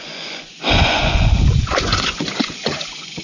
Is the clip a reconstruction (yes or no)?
yes